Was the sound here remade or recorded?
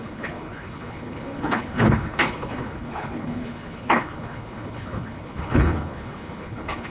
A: remade